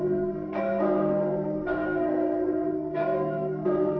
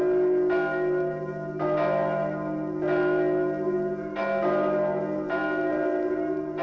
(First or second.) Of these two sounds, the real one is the second